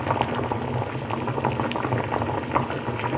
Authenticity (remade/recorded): recorded